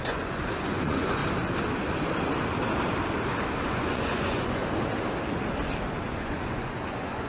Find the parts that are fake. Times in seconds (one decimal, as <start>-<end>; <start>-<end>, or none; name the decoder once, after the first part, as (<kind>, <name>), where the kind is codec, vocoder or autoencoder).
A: 0.0-1.2 (vocoder, Vocos); 3.7-4.6; 6.0-7.3